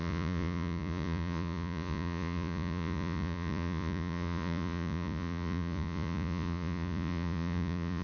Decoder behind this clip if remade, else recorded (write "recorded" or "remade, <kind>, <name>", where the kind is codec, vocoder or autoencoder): remade, vocoder, Vocos